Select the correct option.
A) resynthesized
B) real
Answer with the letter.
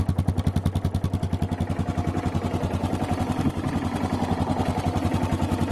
B